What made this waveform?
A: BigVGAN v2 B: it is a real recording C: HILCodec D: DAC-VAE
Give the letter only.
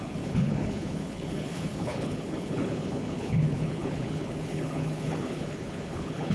C